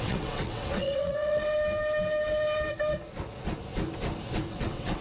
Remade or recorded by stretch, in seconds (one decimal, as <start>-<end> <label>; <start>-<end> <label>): 0.0-1.5 remade; 1.5-4.5 recorded; 4.5-5.0 remade